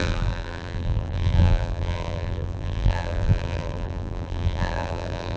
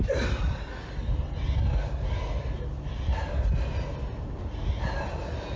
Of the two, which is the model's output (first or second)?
first